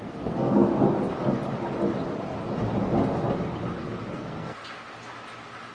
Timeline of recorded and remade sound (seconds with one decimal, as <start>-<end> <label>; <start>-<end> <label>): 0.0-0.7 remade; 0.7-4.1 recorded; 4.1-4.6 remade; 4.6-5.7 recorded